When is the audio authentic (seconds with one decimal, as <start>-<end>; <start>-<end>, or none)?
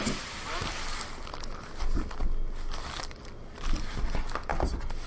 0.0-5.1